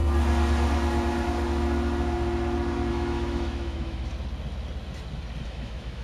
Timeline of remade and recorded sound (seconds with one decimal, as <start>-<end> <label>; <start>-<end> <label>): 0.0-2.9 recorded; 2.9-4.1 remade; 4.1-5.4 recorded; 5.4-6.0 remade